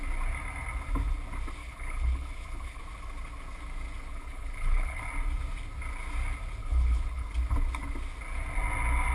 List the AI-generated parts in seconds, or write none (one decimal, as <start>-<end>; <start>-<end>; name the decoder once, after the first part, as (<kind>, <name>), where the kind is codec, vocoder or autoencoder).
1.6-2.8 (codec, HILCodec); 4.1-5.0; 6.6-7.3